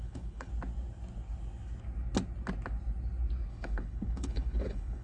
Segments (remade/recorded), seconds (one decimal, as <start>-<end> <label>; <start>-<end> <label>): 0.0-0.5 remade; 0.5-3.5 recorded; 3.5-5.0 remade